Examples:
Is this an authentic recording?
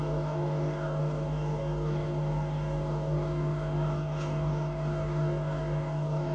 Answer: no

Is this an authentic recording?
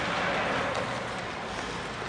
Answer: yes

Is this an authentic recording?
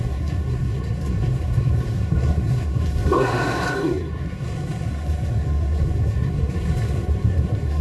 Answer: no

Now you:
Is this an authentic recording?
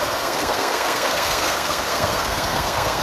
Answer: no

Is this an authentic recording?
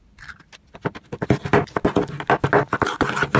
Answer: yes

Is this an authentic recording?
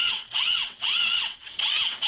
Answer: no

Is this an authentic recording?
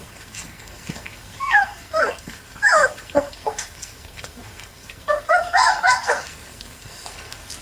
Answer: no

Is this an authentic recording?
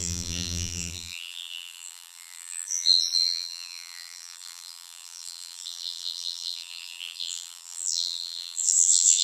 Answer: no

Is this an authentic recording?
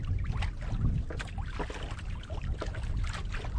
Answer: yes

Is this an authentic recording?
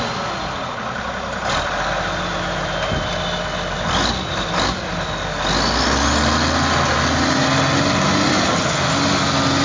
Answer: yes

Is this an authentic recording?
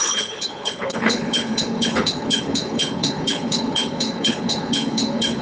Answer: no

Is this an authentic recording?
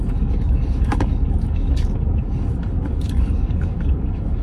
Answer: no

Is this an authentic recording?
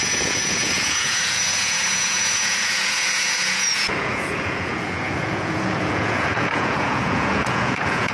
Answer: no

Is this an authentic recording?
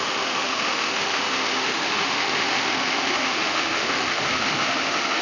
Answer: no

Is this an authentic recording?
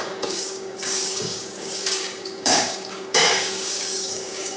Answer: no